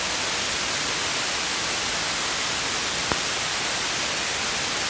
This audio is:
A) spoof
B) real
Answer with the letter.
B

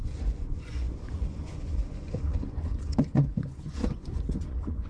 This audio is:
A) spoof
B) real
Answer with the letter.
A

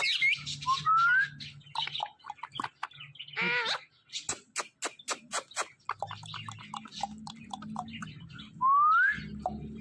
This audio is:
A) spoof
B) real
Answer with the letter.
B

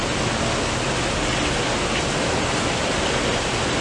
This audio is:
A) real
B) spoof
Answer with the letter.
A